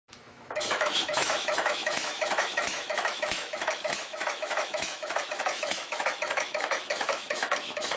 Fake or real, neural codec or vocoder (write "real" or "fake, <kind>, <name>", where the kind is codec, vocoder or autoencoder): fake, autoencoder, DAC-VAE